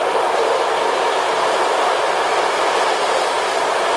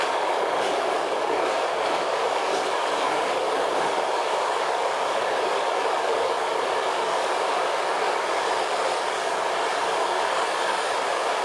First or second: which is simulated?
second